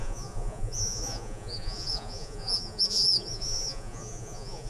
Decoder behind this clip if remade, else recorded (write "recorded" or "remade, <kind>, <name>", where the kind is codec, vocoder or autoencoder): remade, vocoder, Vocos